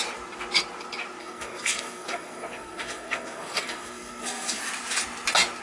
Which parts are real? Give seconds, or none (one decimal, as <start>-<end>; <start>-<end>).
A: 0.0-1.2; 4.6-5.6